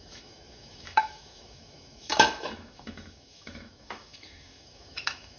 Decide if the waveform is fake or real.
fake